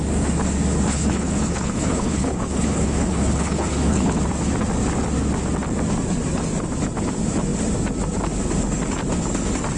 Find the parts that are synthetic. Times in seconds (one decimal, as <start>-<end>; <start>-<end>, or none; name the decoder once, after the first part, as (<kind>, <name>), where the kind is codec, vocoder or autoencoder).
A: 0.9-4.2 (codec, HILCodec)

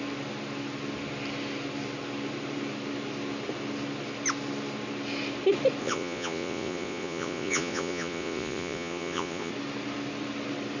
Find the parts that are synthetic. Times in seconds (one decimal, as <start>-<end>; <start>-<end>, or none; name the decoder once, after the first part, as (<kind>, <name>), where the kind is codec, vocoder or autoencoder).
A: 5.8-9.5 (vocoder, Vocos)